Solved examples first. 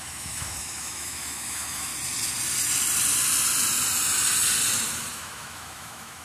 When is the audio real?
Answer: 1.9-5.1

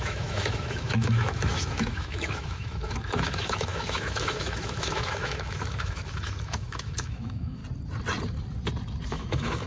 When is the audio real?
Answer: 7.6-9.1

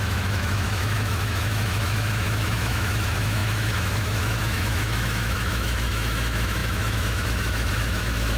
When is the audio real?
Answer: none

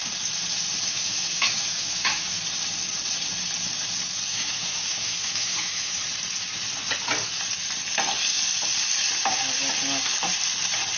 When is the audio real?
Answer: 0.0-0.9; 2.4-4.3; 6.0-11.0

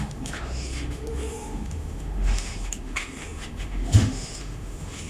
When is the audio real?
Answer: none